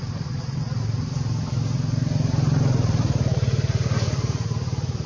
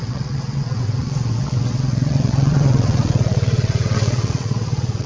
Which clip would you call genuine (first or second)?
first